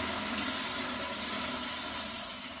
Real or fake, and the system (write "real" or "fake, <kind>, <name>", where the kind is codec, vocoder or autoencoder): real